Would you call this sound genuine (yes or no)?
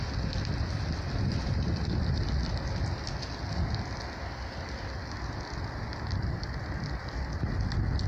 yes